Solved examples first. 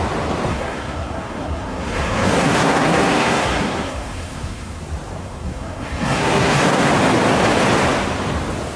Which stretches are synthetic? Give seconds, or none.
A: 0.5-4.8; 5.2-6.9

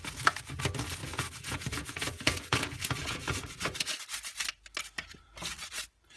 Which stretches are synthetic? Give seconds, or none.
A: 1.0-4.0

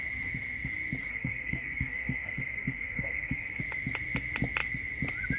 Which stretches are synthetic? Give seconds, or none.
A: 1.1-3.6

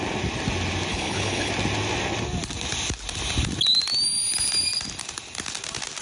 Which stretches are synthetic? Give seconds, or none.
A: 0.9-1.5

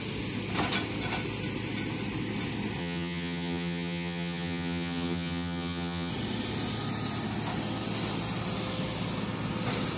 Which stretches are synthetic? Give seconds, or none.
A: 2.8-6.1

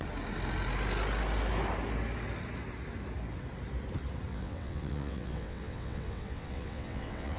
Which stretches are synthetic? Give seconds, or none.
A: 4.3-7.4

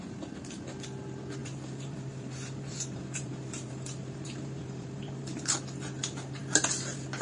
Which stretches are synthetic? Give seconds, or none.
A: 1.4-5.4

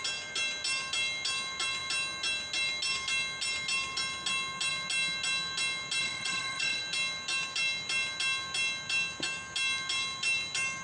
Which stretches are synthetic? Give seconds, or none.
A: 6.0-6.8